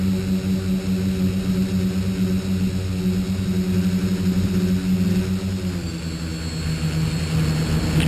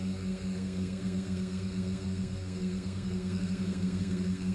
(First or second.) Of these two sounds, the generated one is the second